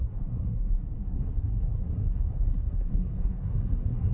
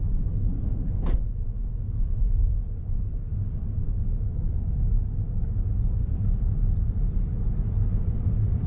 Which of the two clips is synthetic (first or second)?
first